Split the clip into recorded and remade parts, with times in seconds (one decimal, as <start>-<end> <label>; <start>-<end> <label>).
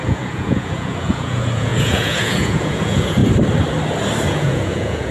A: 0.0-3.2 remade; 3.2-4.3 recorded; 4.3-5.1 remade